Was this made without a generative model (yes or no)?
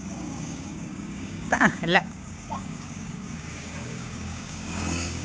no